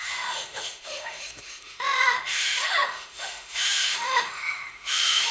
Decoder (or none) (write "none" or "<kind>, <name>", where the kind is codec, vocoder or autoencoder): autoencoder, DAC-VAE